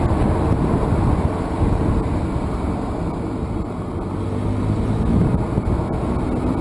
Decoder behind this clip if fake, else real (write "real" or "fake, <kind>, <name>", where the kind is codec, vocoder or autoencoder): real